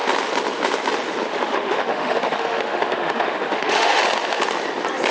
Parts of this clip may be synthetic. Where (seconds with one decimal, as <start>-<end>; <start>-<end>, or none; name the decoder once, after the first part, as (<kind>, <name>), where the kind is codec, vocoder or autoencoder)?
1.3-4.0 (autoencoder, DAC-VAE)